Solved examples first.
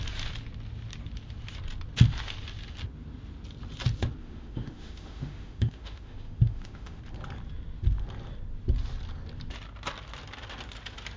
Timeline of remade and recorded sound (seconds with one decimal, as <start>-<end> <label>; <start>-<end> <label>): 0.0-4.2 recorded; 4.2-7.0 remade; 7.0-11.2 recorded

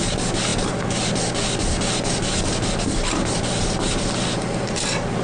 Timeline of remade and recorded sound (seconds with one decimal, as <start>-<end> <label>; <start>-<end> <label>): 0.0-5.2 recorded

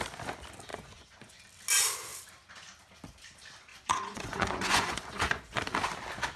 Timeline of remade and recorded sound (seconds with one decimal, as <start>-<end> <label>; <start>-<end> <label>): 0.0-0.7 recorded; 0.7-1.4 remade; 1.4-3.7 recorded; 3.7-5.6 remade; 5.6-6.4 recorded

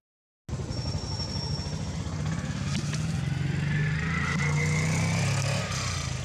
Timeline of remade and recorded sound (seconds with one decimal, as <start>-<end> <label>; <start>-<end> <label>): 0.0-6.2 recorded

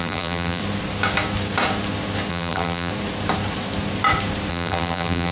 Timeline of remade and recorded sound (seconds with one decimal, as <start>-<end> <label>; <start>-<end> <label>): 0.0-0.6 remade; 0.6-2.3 recorded; 2.3-2.9 remade; 2.9-4.5 recorded; 4.5-5.3 remade

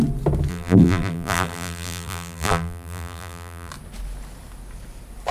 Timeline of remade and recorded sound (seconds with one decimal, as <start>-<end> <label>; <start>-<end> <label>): 0.0-0.5 recorded; 0.5-3.7 remade; 3.7-5.3 recorded

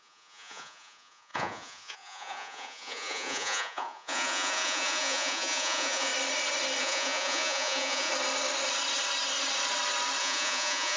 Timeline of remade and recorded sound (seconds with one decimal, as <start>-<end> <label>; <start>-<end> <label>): 0.0-6.1 remade; 6.1-6.8 recorded; 6.8-8.1 remade; 8.1-10.2 recorded; 10.2-11.0 remade